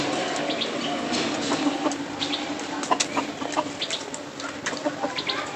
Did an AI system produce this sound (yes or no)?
no